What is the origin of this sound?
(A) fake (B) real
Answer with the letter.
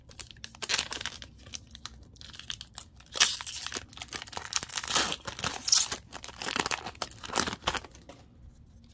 B